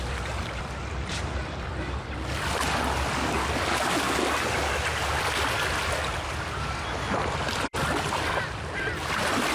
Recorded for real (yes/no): yes